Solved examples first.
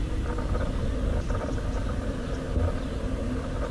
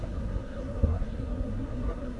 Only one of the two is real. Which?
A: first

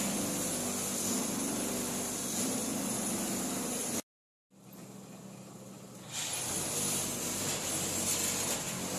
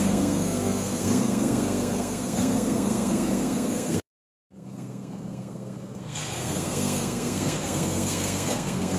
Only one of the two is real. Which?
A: first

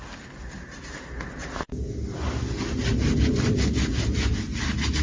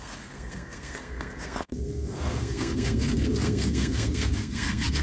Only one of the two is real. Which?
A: first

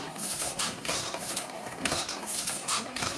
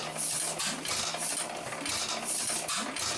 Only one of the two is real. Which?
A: second